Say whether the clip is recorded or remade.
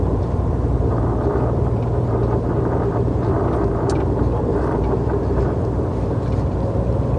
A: remade